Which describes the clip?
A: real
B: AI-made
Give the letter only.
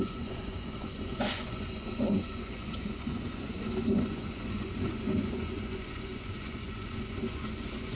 B